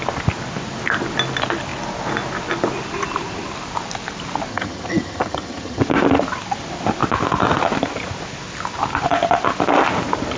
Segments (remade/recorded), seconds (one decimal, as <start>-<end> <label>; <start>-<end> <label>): 0.0-4.5 recorded; 4.5-5.8 remade; 5.8-10.4 recorded